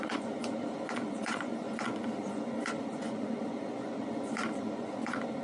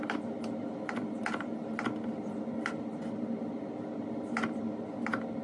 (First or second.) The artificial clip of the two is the first